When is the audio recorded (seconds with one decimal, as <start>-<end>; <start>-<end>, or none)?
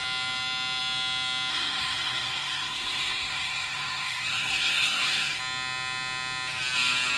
0.0-1.5; 5.4-7.2